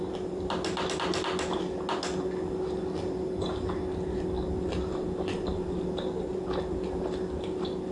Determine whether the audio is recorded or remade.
recorded